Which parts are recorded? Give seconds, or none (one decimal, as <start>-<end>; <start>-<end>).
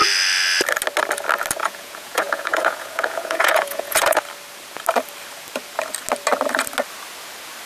0.0-1.6; 4.2-7.7